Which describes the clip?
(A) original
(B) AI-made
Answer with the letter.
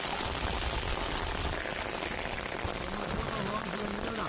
A